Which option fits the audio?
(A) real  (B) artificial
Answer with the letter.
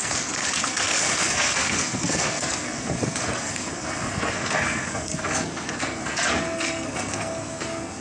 B